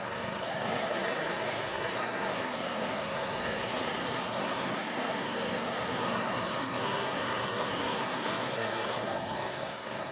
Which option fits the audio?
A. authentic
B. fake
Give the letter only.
B